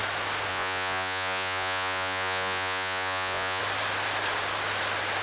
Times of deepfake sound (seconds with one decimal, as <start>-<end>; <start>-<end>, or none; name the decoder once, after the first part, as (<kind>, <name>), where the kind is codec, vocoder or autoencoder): 0.5-3.6 (vocoder, Vocos)